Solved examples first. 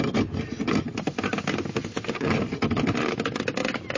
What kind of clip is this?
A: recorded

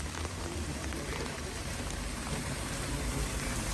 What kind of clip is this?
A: remade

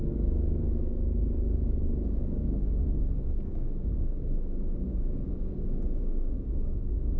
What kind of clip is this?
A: remade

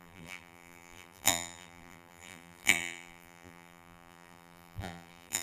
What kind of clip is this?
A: remade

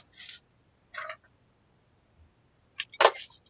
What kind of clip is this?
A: recorded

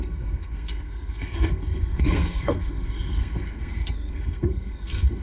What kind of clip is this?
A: remade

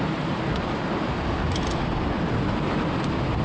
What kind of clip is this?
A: remade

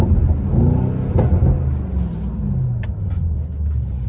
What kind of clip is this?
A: recorded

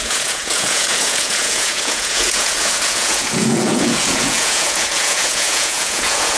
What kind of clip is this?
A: remade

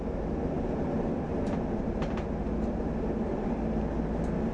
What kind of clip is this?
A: recorded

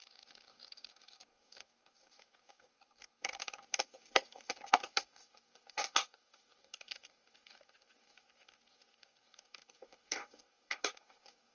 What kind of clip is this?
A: remade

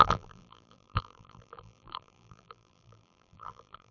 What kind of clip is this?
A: remade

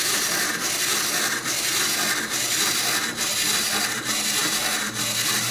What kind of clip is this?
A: recorded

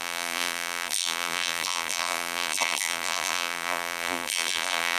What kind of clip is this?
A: remade